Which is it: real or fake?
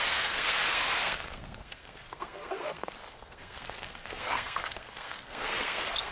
fake